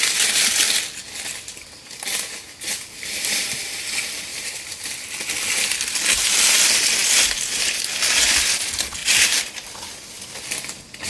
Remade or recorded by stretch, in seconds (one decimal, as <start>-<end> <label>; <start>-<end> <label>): 0.0-4.3 recorded; 4.3-4.8 remade; 4.8-11.1 recorded